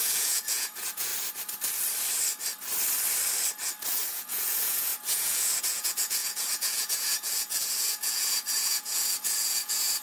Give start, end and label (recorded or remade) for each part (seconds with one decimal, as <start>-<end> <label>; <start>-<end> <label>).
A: 0.0-1.1 remade; 1.1-3.9 recorded; 3.9-10.0 remade